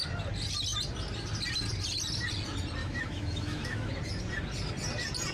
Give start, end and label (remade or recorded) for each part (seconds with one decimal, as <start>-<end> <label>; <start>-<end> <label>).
0.0-2.8 recorded; 2.8-3.9 remade; 3.9-5.3 recorded